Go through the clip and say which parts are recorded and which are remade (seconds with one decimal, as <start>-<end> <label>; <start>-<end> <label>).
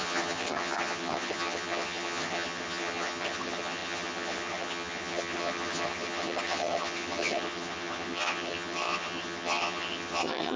0.0-10.6 remade